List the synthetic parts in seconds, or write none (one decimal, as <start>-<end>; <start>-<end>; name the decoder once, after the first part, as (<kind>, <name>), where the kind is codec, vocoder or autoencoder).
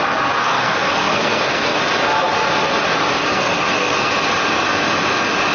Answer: 0.4-1.8 (codec, SNAC); 3.3-4.1